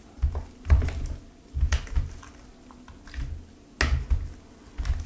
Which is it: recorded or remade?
recorded